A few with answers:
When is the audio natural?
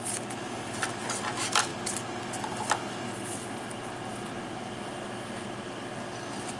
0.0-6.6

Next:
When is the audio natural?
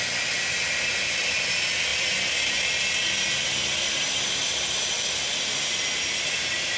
0.0-6.8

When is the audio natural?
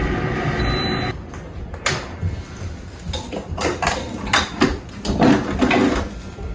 0.0-6.5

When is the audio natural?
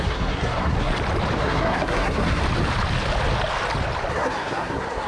0.9-1.4; 2.4-4.1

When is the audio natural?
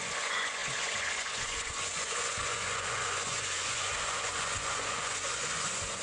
none